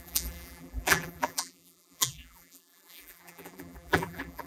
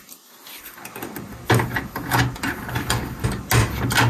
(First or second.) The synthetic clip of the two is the first